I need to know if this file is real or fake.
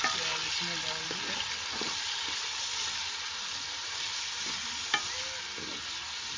real